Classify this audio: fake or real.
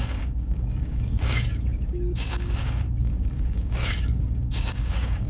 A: fake